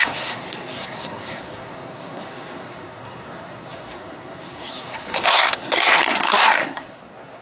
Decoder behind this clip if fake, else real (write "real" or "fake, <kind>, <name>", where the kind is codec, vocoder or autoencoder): fake, codec, SNAC